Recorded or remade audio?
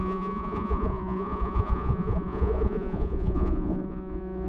remade